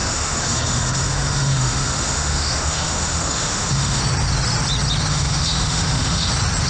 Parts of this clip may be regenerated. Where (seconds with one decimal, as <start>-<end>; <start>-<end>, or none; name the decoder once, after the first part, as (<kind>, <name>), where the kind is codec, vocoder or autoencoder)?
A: 0.0-4.0 (autoencoder, DAC-VAE); 5.1-6.3